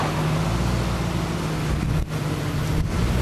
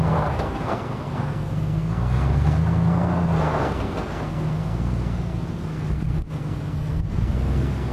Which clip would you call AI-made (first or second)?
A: second